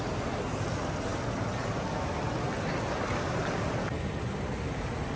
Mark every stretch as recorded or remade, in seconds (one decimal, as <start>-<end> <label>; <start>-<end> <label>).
0.0-5.2 recorded

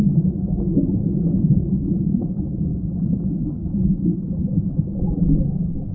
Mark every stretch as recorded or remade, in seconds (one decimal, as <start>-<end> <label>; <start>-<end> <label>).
0.0-5.9 recorded

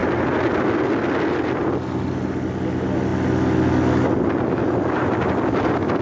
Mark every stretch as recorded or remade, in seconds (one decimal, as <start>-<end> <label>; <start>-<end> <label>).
0.0-6.0 recorded

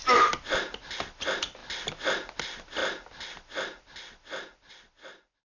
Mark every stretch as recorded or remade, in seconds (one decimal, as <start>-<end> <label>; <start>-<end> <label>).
0.0-5.5 recorded

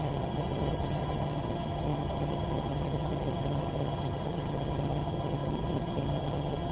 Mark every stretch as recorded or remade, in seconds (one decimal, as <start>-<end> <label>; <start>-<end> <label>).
0.0-6.7 remade

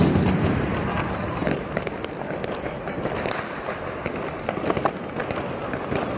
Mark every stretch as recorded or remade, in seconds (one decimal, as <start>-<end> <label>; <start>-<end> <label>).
0.0-6.2 recorded